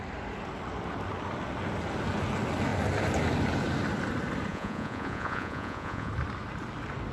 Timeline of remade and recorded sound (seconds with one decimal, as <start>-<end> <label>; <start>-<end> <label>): 0.0-4.5 recorded; 4.5-6.1 remade; 6.1-7.1 recorded